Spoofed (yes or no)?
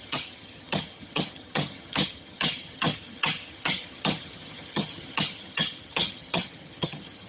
yes